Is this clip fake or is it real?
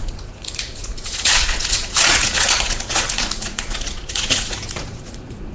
fake